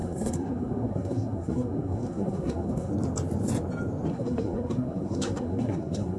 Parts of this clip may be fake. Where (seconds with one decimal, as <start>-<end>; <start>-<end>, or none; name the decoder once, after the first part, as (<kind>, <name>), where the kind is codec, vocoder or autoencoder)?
0.0-2.9 (codec, SNAC); 4.1-6.2